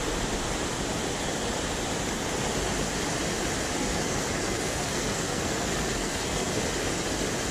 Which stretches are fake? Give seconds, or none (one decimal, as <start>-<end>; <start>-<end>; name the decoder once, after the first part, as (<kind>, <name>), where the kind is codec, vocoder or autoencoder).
3.8-6.5 (codec, SNAC)